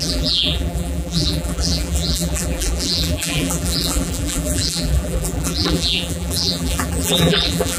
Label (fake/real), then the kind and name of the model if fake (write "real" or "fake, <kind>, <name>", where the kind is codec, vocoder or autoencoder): fake, vocoder, BigVGAN v2